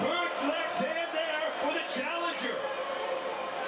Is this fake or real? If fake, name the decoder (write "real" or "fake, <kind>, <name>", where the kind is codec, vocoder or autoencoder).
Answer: real